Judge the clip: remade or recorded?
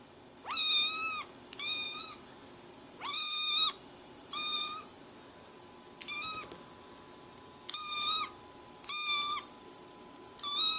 recorded